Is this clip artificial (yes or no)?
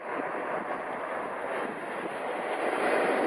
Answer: no